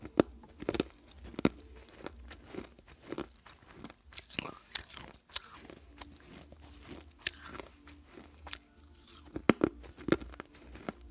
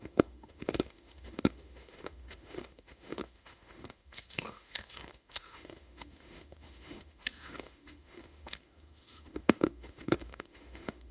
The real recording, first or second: first